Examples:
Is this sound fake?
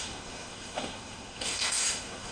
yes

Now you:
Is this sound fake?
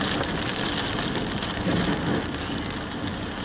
no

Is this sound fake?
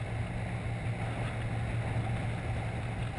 no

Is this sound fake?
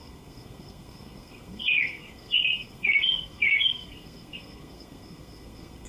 yes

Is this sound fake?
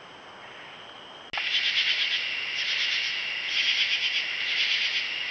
no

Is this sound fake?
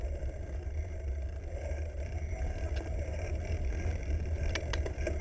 no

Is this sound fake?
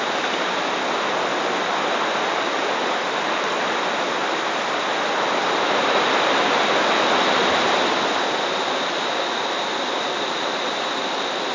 no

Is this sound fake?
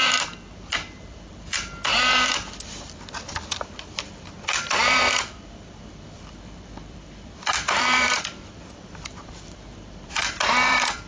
yes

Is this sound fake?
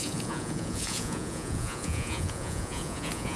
yes